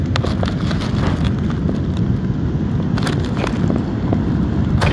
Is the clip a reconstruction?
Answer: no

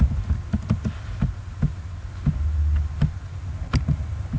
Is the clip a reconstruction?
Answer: no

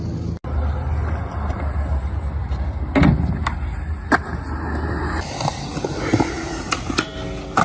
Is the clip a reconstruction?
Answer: no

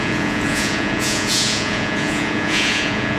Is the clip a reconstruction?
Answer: yes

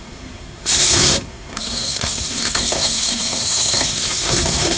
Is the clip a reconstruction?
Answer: yes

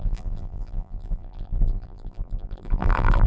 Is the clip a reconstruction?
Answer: yes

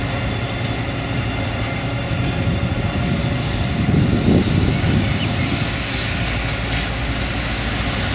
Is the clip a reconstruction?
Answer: no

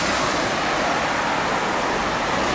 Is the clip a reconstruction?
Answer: no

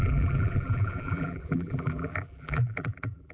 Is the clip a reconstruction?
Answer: yes